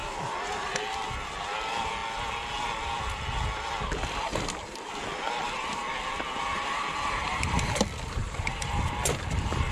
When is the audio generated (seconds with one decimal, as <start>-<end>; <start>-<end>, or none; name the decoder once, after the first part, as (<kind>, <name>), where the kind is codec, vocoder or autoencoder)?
0.0-0.8 (vocoder, BigVGAN v2); 6.5-7.8; 8.2-8.8